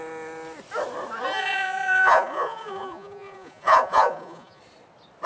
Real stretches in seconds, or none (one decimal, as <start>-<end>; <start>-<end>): 0.0-1.4; 4.6-5.3